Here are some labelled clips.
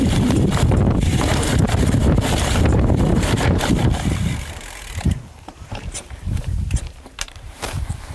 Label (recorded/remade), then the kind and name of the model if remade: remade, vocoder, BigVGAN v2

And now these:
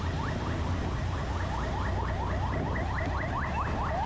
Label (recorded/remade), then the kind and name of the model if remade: recorded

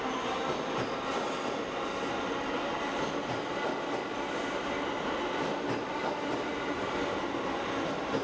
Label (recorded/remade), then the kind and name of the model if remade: recorded